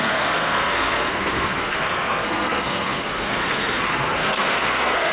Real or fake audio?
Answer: fake